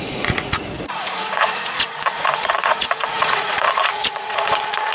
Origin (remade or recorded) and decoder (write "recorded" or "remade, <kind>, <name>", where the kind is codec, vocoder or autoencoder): remade, vocoder, Vocos